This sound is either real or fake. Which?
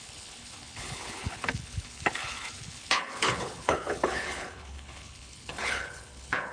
fake